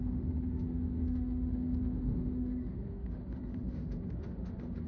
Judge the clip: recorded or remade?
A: remade